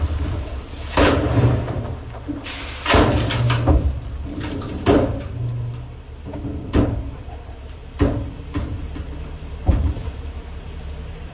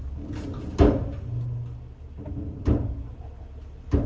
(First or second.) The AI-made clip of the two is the first